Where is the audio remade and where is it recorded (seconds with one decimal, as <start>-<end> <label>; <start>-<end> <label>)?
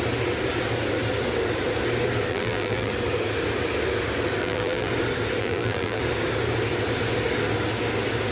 0.0-2.3 recorded; 2.3-2.9 remade; 2.9-4.4 recorded; 4.4-4.9 remade; 4.9-5.4 recorded; 5.4-6.0 remade; 6.0-8.3 recorded